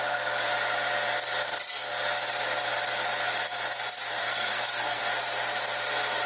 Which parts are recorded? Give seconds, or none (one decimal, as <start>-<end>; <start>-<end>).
0.0-4.2; 5.0-6.3